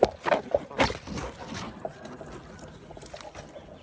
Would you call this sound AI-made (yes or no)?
no